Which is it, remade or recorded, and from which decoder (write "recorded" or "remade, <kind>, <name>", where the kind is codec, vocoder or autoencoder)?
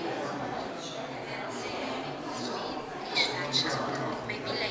recorded